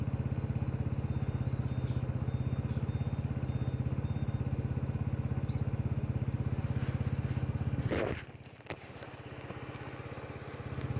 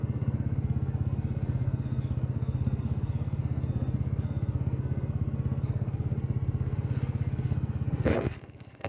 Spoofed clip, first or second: second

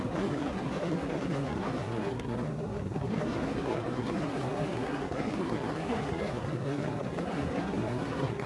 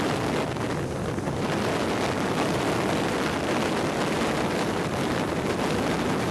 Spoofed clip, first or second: first